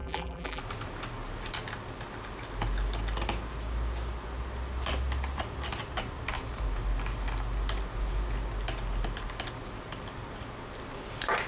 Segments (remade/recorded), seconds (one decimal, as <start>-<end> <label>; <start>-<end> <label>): 0.0-0.6 remade; 0.6-11.5 recorded